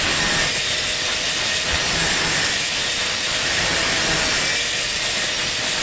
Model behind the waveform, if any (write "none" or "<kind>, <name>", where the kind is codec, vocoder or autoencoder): none